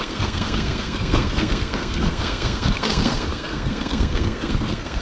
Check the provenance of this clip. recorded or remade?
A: remade